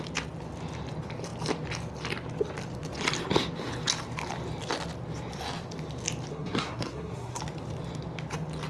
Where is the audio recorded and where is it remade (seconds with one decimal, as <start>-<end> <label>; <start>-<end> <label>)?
0.0-6.3 recorded; 6.3-7.4 remade; 7.4-8.7 recorded

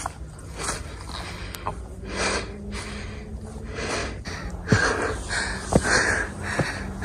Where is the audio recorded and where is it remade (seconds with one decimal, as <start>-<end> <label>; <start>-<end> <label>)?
0.0-4.0 recorded; 4.0-4.5 remade; 4.5-7.0 recorded

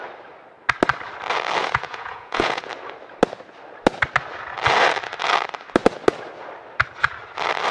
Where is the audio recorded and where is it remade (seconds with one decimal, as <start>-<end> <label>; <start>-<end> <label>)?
0.0-1.6 recorded; 1.6-2.7 remade; 2.7-7.7 recorded

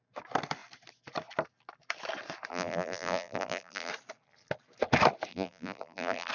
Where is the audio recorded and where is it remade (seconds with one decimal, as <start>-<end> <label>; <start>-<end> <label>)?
0.0-2.5 recorded; 2.5-3.9 remade; 3.9-5.3 recorded; 5.3-6.3 remade

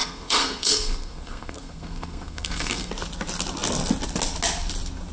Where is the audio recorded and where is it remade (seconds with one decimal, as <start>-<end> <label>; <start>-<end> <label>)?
0.0-2.9 remade; 2.9-5.1 recorded

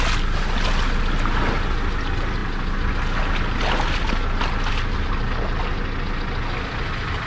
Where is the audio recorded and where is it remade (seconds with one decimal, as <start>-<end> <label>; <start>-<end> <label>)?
0.0-7.3 recorded

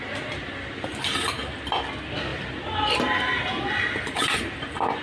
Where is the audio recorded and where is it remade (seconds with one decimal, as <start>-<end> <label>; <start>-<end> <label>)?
0.0-5.0 recorded